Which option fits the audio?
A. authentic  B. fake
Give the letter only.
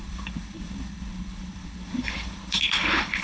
B